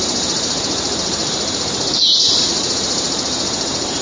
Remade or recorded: remade